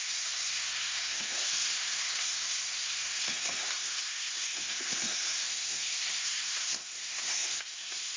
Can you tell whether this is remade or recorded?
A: remade